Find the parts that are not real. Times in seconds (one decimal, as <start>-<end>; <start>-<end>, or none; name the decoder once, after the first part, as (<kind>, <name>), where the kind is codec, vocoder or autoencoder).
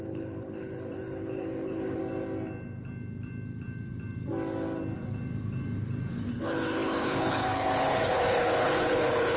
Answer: 0.0-2.0 (codec, HILCodec); 6.3-9.4